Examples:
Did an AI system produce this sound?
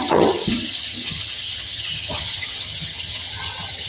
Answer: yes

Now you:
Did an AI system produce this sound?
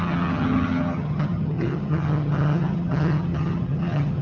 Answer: yes